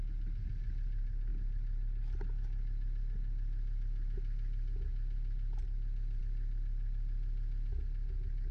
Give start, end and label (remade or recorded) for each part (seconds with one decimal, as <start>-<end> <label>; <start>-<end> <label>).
0.0-8.5 recorded

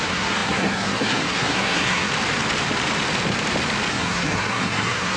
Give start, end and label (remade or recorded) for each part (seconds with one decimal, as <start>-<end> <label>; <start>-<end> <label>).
0.0-2.1 remade; 2.1-3.9 recorded; 3.9-5.2 remade

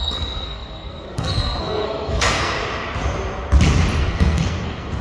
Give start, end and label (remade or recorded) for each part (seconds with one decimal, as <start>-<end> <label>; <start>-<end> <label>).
0.0-2.6 remade; 2.6-4.0 recorded; 4.0-5.0 remade

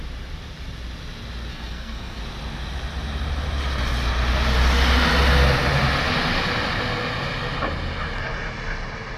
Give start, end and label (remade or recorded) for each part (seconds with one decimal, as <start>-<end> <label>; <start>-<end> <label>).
0.0-1.5 recorded; 1.5-2.2 remade; 2.2-9.2 recorded

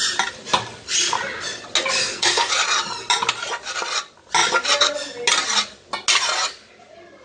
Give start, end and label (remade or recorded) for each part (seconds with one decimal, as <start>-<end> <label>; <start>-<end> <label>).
0.0-2.0 recorded; 2.0-2.5 remade; 2.5-7.2 recorded